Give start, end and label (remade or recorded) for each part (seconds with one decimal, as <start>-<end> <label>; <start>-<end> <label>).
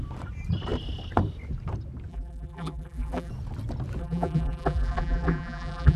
0.0-2.1 recorded; 2.1-3.3 remade; 3.3-4.0 recorded; 4.0-6.0 remade